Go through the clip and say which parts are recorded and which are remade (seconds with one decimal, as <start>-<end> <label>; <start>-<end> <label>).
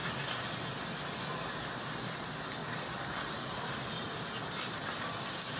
0.0-5.6 recorded